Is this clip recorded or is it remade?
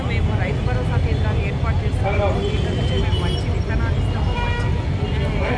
recorded